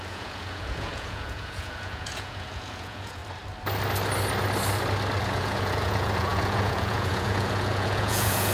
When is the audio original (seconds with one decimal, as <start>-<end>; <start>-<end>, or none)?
3.2-5.2